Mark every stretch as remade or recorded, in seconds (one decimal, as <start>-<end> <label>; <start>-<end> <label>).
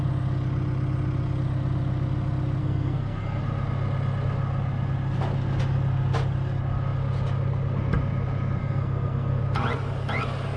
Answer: 0.0-2.6 recorded; 2.6-3.4 remade; 3.4-8.6 recorded; 8.6-9.4 remade; 9.4-10.6 recorded